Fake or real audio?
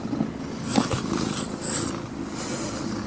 real